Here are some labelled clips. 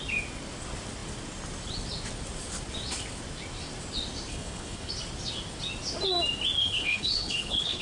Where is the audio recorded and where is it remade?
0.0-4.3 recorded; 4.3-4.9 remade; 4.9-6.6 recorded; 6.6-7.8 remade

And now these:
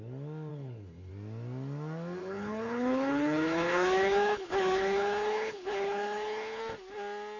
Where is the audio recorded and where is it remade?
0.0-0.5 recorded; 0.5-1.1 remade; 1.1-2.2 recorded; 2.2-6.6 remade; 6.6-7.4 recorded

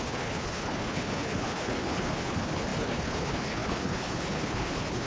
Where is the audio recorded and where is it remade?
0.0-5.1 remade

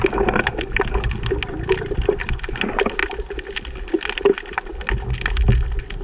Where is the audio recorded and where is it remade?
0.0-6.0 recorded

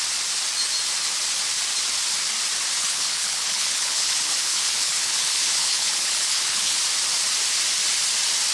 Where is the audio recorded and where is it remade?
0.0-2.8 recorded; 2.8-6.8 remade; 6.8-8.5 recorded

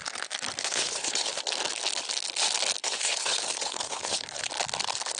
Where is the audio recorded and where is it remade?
0.0-0.6 recorded; 0.6-1.4 remade; 1.4-2.8 recorded; 2.8-4.5 remade; 4.5-5.2 recorded